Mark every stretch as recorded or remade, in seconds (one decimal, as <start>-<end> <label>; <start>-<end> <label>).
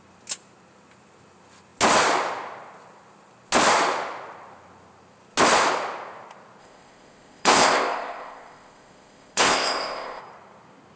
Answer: 0.0-6.6 recorded; 6.6-10.2 remade; 10.2-11.0 recorded